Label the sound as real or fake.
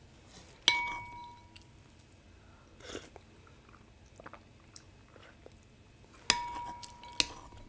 real